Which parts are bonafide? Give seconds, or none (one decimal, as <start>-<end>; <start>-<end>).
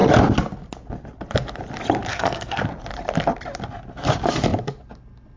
0.0-2.1; 2.6-5.4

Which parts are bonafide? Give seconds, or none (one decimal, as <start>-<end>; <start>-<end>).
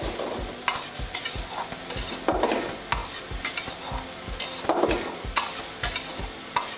0.0-6.8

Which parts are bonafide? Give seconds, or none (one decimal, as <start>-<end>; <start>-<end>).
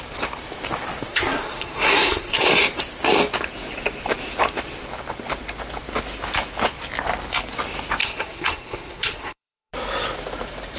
0.0-1.1; 2.3-8.0; 9.7-10.8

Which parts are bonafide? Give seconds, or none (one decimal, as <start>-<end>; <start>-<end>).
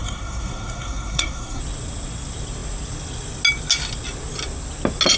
1.6-5.2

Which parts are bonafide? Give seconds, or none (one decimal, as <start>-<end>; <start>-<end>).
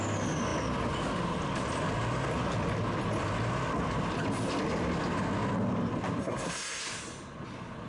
0.0-6.2; 6.8-7.9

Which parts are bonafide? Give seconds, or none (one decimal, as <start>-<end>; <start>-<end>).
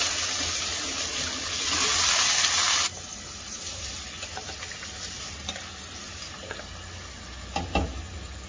0.0-8.5